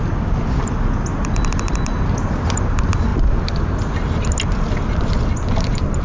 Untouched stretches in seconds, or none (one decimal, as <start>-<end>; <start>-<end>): 0.0-6.0